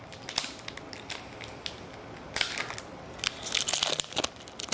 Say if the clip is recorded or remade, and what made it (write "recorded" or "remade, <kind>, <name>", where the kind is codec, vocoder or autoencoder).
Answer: recorded